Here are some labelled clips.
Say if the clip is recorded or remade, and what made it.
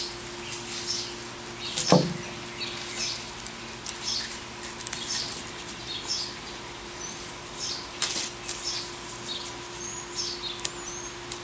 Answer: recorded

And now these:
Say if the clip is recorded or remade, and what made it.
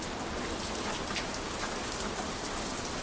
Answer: recorded